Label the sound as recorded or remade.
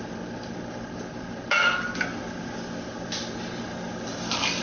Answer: recorded